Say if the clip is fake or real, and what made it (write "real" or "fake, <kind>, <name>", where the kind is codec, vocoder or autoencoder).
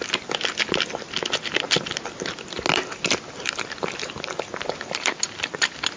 real